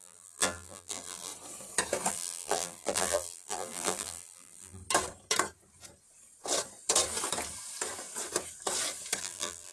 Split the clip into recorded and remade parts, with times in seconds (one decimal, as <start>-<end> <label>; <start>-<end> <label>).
0.0-1.3 remade; 1.3-2.1 recorded; 2.1-4.8 remade; 4.8-9.2 recorded; 9.2-9.7 remade